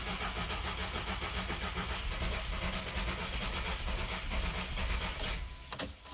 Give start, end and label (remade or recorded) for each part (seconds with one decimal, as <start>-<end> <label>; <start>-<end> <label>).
0.0-6.1 recorded

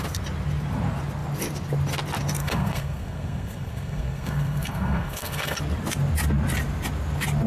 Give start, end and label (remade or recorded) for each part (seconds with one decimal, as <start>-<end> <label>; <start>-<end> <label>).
0.0-2.4 recorded; 2.4-5.6 remade; 5.6-7.5 recorded

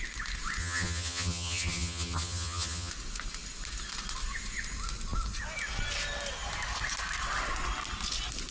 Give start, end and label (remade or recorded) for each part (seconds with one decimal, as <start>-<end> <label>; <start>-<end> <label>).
0.0-0.6 recorded; 0.6-2.9 remade; 2.9-8.5 recorded

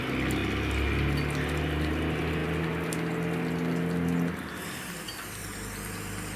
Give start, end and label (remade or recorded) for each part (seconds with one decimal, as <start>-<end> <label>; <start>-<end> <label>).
0.0-6.4 recorded

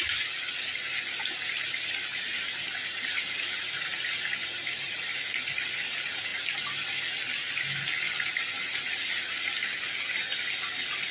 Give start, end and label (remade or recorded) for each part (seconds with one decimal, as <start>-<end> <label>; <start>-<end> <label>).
0.0-2.1 recorded; 2.1-5.3 remade; 5.3-11.1 recorded

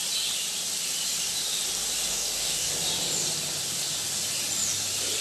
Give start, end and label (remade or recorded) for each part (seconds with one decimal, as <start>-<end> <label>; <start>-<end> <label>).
0.0-2.1 recorded; 2.1-2.7 remade; 2.7-5.2 recorded